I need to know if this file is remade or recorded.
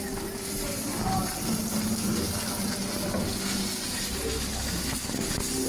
recorded